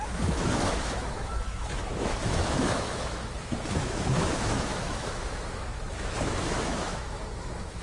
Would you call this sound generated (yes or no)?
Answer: yes